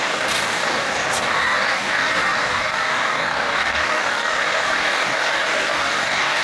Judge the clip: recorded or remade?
remade